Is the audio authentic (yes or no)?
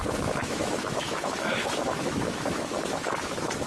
no